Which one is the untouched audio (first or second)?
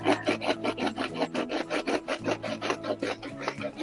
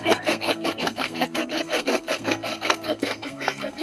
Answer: first